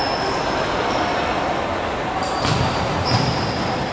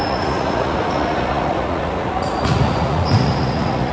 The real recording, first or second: first